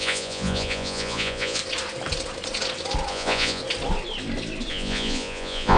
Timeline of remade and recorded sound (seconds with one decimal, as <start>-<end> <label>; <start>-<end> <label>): 0.0-1.6 remade; 1.6-3.1 recorded; 3.1-3.6 remade; 3.6-4.7 recorded; 4.7-5.8 remade

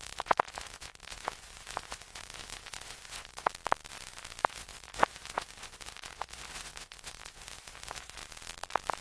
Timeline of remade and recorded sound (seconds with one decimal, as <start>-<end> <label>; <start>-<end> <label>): 0.0-3.5 remade; 3.5-4.5 recorded; 4.5-8.2 remade; 8.2-9.0 recorded

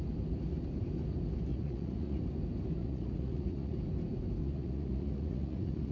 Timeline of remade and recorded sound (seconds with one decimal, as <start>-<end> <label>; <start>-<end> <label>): 0.0-1.5 recorded; 1.5-2.2 remade; 2.2-2.8 recorded; 2.8-3.8 remade; 3.8-4.4 recorded; 4.4-5.9 remade

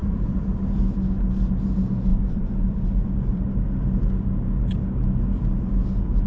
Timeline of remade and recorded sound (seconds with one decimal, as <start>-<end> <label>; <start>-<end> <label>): 0.0-0.8 remade; 0.8-2.1 recorded; 2.1-3.5 remade; 3.5-6.3 recorded

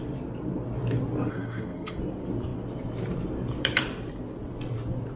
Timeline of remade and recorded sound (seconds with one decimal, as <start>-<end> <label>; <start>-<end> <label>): 0.0-1.3 recorded; 1.3-2.0 remade; 2.0-5.2 recorded

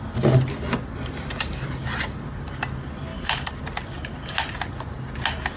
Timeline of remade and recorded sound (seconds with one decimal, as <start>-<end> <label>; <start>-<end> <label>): 0.0-3.1 recorded; 3.1-3.6 remade; 3.6-5.6 recorded

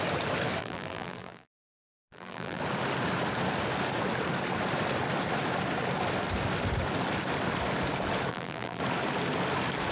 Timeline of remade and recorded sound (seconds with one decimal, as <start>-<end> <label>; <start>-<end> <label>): 0.0-0.6 recorded; 0.6-2.6 remade; 2.6-8.3 recorded; 8.3-8.8 remade; 8.8-9.9 recorded

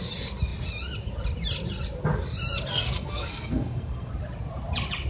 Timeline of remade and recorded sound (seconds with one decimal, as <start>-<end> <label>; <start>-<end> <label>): 0.0-2.7 recorded; 2.7-4.1 remade; 4.1-5.1 recorded